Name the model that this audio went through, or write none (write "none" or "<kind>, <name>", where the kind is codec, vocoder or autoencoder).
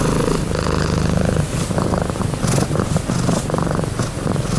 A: none